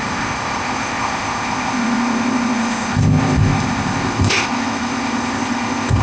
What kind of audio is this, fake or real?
fake